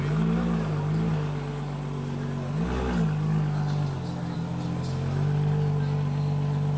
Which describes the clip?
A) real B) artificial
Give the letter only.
A